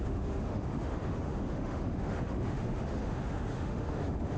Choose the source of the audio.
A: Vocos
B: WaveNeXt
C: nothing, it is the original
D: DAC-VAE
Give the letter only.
D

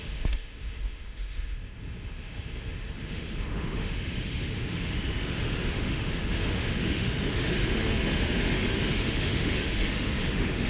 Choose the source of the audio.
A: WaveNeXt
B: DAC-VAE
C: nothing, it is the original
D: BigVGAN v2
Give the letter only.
B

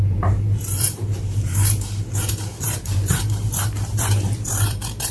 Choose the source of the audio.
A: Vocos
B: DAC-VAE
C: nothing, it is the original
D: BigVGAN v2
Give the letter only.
D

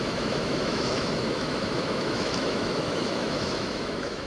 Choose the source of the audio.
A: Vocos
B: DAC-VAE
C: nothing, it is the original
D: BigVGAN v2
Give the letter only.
B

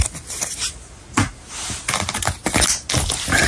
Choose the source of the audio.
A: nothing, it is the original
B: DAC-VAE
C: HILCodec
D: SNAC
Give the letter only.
A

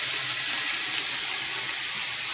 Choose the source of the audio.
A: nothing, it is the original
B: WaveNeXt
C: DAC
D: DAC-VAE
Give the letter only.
A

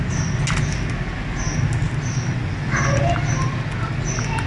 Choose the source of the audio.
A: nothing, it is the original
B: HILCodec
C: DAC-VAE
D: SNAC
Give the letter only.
A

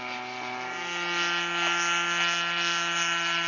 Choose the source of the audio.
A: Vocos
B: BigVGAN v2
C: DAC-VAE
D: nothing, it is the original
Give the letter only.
D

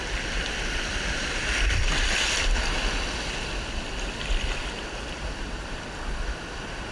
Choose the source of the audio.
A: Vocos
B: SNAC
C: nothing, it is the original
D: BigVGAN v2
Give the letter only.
C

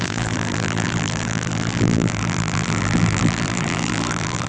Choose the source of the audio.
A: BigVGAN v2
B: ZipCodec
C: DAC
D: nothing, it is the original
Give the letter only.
A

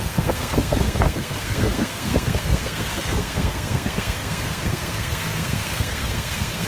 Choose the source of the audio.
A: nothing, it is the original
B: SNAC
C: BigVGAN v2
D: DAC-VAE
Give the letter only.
B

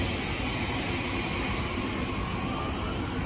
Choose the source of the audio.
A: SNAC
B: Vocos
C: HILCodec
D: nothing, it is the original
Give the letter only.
D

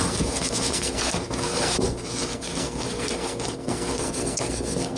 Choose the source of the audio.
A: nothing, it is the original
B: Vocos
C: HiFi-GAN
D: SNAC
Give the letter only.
D